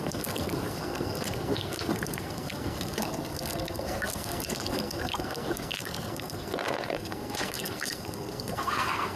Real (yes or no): no